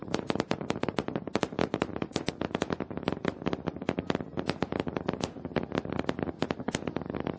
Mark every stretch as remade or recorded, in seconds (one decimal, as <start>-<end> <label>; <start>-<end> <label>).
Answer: 0.0-2.3 remade; 2.3-7.4 recorded

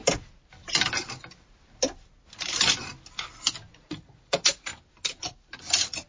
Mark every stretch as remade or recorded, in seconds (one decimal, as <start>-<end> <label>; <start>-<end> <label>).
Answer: 0.0-3.7 recorded; 3.7-4.7 remade; 4.7-6.1 recorded

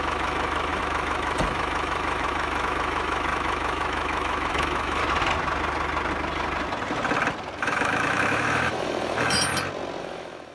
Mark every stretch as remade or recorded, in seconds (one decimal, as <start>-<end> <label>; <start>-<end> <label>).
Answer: 0.0-5.0 remade; 5.0-7.6 recorded; 7.6-9.5 remade; 9.5-10.0 recorded; 10.0-10.5 remade

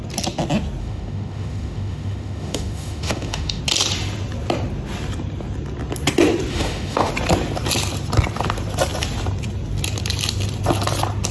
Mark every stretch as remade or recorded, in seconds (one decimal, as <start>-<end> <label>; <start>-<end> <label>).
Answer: 0.0-0.8 recorded; 0.8-3.6 remade; 3.6-6.5 recorded; 6.5-7.1 remade; 7.1-11.3 recorded